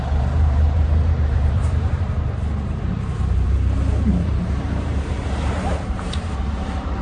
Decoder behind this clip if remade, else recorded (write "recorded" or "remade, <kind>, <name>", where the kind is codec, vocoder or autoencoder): remade, vocoder, BigVGAN v2